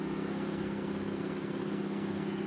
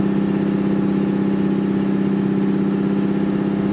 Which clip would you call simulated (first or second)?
first